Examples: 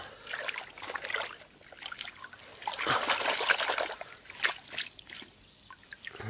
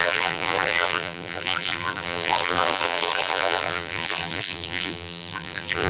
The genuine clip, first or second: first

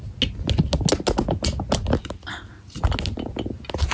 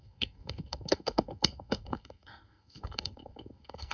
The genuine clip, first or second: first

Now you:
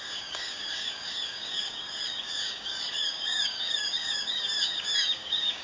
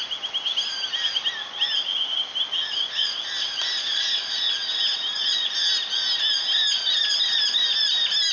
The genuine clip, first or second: second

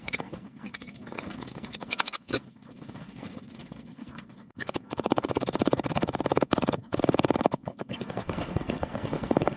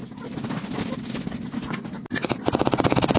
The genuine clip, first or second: second